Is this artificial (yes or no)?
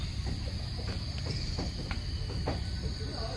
no